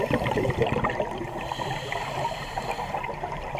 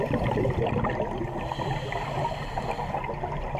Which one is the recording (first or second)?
second